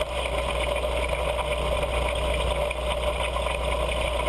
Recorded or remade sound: recorded